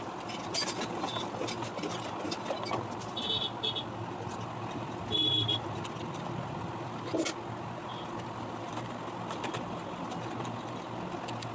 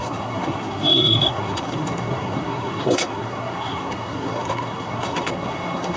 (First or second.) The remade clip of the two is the second